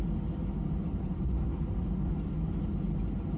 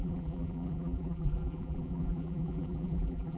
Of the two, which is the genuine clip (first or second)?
first